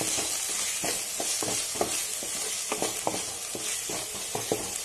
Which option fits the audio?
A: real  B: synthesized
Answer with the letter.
A